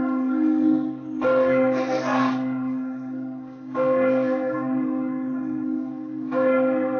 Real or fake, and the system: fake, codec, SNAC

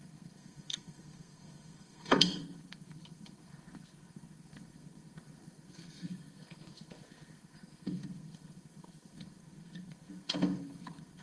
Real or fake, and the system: fake, codec, SNAC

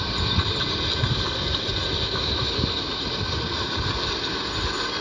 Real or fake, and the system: real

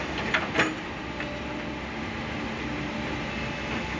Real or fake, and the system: real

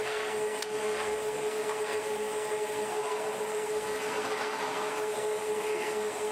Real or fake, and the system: fake, codec, SNAC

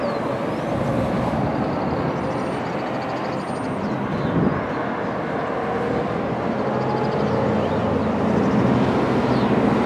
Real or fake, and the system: real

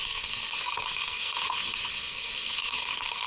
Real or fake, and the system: fake, codec, SNAC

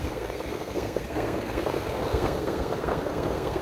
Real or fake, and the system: fake, codec, SNAC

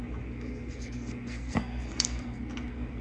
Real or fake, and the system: fake, codec, SNAC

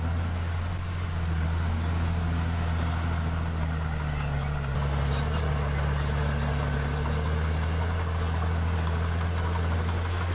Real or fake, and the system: real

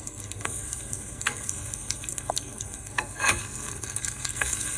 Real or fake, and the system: fake, codec, SNAC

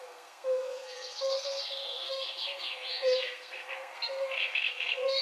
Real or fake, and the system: fake, codec, SNAC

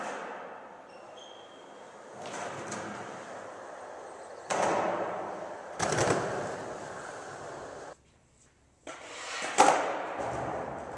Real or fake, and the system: real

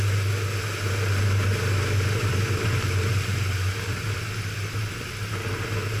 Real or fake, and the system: real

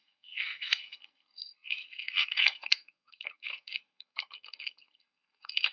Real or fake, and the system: fake, codec, SNAC